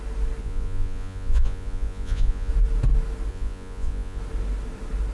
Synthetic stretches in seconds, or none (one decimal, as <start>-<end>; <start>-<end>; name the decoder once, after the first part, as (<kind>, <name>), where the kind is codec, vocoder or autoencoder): 0.4-2.5 (vocoder, Vocos); 3.3-4.2